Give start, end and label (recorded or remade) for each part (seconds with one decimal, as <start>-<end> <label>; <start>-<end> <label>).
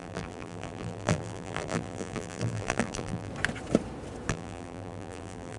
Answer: 0.0-3.3 remade; 3.3-4.3 recorded; 4.3-5.6 remade